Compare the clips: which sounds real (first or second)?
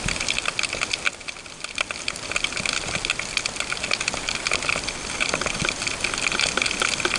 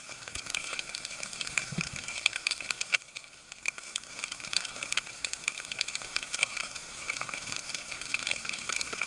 first